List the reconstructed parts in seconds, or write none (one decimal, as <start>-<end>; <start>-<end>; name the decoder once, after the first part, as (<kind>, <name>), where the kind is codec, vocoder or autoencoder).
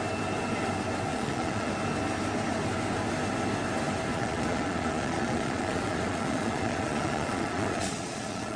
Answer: 1.1-1.7 (vocoder, Vocos); 4.1-8.6